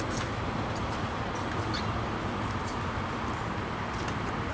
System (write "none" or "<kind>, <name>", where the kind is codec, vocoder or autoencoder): none